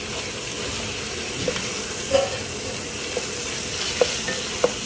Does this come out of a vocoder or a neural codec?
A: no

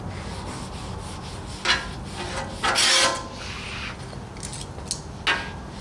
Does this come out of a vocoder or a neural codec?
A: no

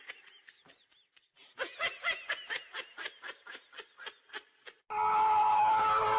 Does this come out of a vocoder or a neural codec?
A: no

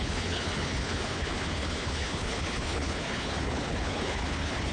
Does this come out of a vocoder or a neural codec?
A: yes